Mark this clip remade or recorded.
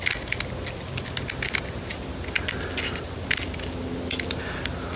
recorded